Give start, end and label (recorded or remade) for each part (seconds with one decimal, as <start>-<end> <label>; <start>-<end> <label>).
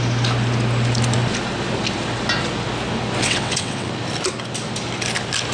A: 0.0-3.2 recorded; 3.2-3.9 remade; 3.9-5.5 recorded